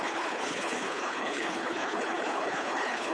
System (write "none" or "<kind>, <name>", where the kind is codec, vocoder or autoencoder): codec, HILCodec